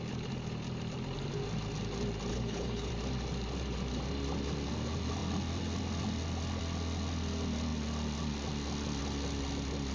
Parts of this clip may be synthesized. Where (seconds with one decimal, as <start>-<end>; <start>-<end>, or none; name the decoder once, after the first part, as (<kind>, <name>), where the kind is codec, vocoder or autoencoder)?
2.3-2.9 (codec, HILCodec)